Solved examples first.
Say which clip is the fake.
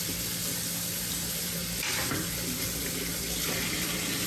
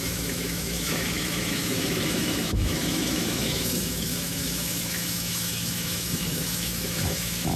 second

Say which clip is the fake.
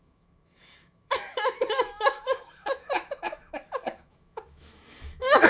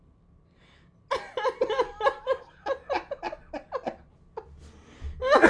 first